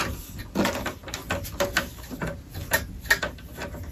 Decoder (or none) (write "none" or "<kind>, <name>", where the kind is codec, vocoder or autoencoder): none